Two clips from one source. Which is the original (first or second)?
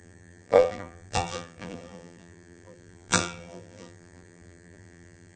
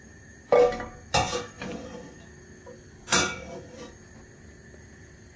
second